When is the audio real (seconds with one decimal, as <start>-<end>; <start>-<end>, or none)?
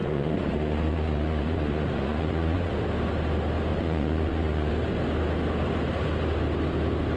2.7-3.7; 4.7-7.2